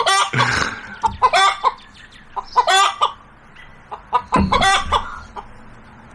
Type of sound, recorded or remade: recorded